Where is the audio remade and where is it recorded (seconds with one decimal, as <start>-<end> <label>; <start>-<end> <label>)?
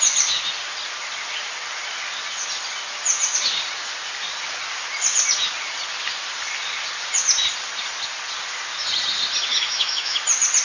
0.0-9.5 recorded; 9.5-10.2 remade; 10.2-10.6 recorded